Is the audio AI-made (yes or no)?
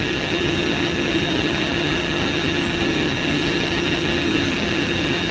yes